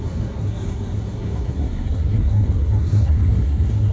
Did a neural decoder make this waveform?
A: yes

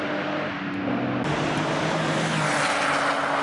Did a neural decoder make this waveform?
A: no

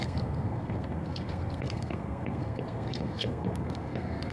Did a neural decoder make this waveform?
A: yes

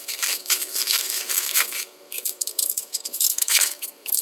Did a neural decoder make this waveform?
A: yes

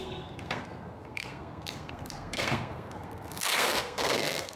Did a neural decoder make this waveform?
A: yes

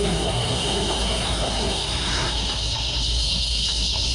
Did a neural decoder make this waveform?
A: yes